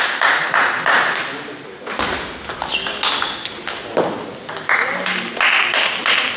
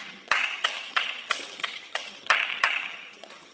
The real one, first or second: first